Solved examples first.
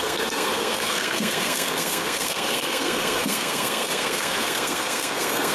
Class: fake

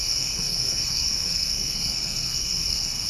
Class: fake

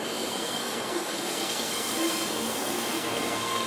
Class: fake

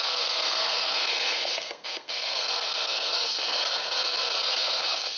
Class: fake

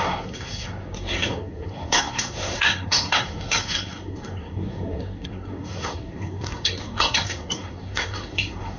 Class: fake